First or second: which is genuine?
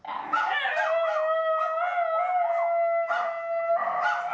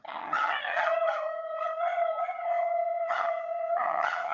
first